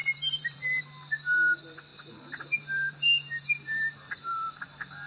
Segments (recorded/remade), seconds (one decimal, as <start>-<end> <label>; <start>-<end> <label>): 0.0-0.8 remade; 0.8-1.9 recorded; 1.9-5.1 remade

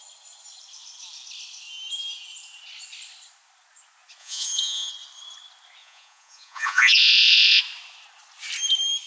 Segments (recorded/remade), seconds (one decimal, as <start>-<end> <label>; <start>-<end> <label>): 0.0-4.2 recorded; 4.2-4.9 remade; 4.9-5.8 recorded; 5.8-7.6 remade; 7.6-9.1 recorded

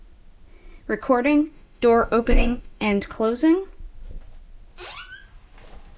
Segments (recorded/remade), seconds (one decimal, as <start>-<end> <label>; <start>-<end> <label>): 0.0-1.5 recorded; 1.5-3.0 remade; 3.0-6.0 recorded

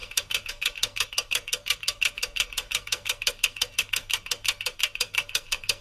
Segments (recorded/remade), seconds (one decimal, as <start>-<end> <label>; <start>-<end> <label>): 0.0-5.8 remade